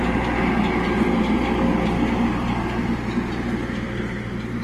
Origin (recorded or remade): recorded